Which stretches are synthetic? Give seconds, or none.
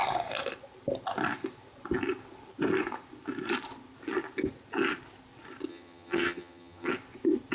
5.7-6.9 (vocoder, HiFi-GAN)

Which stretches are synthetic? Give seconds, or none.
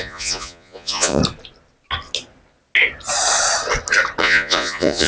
0.0-1.2 (vocoder, Vocos); 4.2-5.1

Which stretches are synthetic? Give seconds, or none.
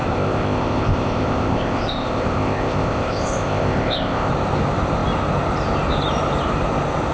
0.0-4.3 (codec, ZipCodec)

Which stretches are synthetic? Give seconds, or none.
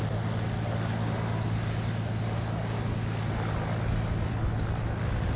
none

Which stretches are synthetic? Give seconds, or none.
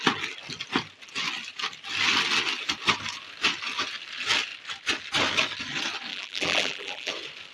6.1-7.1 (vocoder, BigVGAN v2)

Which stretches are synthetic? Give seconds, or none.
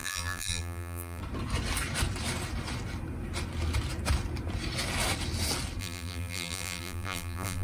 0.0-1.2 (vocoder, BigVGAN v2); 5.8-7.6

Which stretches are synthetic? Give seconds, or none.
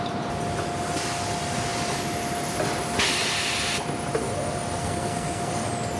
4.8-5.5 (codec, SNAC)